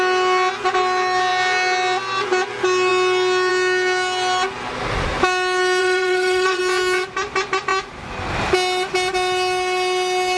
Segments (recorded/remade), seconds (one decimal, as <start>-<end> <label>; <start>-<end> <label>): 0.0-5.8 recorded; 5.8-6.6 remade; 6.6-10.4 recorded